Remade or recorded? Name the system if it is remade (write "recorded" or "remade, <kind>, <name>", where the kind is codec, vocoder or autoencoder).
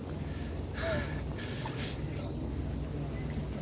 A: recorded